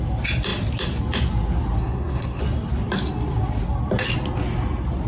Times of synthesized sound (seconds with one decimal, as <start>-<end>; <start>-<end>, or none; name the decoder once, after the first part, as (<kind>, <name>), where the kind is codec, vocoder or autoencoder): 1.8-2.4 (codec, SNAC)